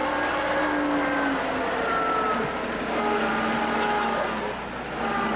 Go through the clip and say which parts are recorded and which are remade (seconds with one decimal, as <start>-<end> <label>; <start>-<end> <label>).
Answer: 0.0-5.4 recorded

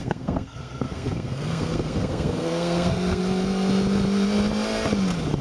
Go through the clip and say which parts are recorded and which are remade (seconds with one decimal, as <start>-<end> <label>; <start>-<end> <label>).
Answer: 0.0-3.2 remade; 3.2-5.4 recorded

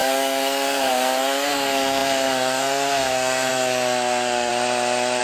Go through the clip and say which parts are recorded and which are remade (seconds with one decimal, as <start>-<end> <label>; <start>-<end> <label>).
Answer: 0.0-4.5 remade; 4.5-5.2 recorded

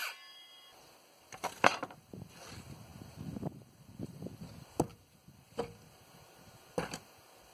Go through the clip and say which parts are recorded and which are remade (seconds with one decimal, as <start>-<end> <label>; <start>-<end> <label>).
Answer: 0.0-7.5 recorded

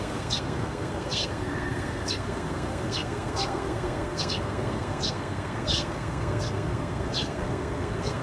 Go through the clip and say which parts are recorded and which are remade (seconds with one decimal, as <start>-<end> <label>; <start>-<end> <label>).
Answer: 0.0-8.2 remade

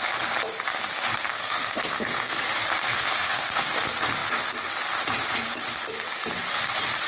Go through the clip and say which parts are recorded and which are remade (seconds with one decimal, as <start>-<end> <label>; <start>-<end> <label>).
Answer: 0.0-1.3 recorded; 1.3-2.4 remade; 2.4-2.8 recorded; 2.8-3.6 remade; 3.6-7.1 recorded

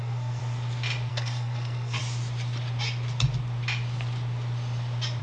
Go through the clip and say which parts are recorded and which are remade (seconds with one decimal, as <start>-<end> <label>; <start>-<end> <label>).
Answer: 0.0-0.4 remade; 0.4-1.1 recorded; 1.1-2.0 remade; 2.0-5.2 recorded